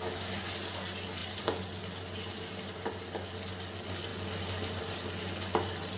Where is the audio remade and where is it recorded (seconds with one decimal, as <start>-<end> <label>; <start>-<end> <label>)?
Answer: 0.0-6.0 recorded